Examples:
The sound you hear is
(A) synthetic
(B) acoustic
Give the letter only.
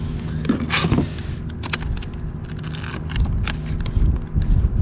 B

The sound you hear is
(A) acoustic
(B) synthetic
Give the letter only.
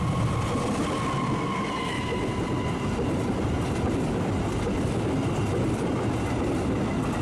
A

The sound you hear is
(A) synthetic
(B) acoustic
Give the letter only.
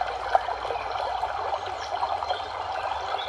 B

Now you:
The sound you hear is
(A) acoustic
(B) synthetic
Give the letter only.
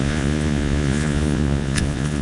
B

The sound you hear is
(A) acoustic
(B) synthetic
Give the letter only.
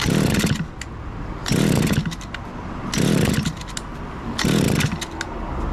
A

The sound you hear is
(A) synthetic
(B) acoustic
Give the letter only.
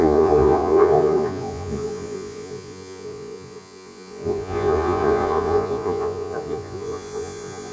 A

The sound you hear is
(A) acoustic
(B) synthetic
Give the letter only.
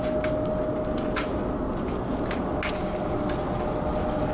A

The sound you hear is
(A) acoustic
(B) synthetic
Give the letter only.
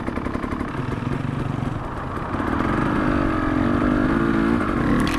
A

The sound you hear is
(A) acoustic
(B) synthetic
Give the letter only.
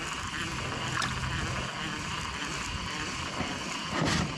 A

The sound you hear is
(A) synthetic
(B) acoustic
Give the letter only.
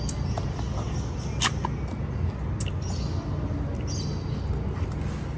B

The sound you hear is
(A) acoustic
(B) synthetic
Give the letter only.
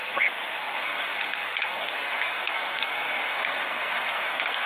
B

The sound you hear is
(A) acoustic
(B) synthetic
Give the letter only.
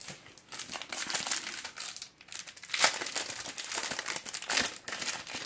A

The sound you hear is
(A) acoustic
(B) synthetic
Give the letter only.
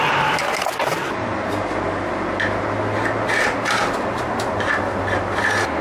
A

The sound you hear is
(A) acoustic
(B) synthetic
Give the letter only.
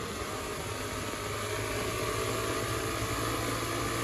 A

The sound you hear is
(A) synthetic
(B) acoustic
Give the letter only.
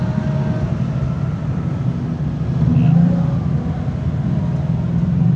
B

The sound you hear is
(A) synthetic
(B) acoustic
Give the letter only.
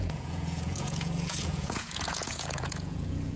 A